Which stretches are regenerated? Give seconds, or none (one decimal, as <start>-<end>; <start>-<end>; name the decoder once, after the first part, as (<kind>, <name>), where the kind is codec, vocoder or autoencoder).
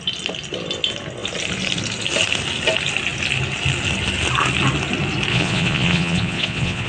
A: 5.3-6.9 (vocoder, Vocos)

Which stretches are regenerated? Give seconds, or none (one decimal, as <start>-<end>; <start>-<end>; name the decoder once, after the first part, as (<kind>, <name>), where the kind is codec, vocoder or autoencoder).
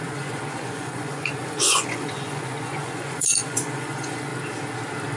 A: 0.0-4.3 (vocoder, Vocos)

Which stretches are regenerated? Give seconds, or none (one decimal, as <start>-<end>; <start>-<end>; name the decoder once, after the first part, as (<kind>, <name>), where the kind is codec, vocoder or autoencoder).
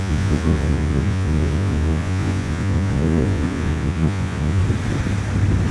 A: 0.0-4.6 (vocoder, Vocos)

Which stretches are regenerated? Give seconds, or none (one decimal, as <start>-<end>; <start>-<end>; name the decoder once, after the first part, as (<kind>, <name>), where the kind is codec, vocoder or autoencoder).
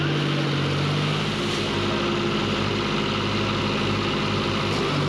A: none